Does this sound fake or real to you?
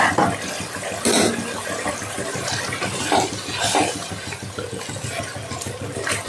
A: real